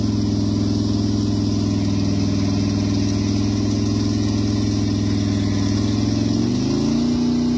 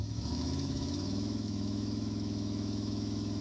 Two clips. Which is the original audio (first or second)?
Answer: first